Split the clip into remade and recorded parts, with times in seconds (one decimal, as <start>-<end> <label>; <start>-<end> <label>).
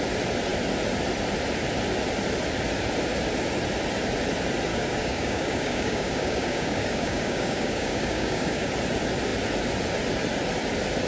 0.0-4.7 recorded; 4.7-8.7 remade; 8.7-11.1 recorded